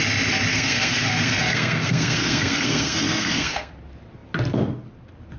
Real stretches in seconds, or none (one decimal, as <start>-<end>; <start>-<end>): 0.0-0.5; 3.7-5.4